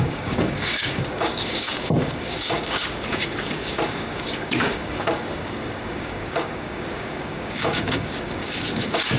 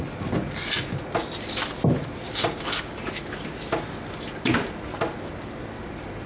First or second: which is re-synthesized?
first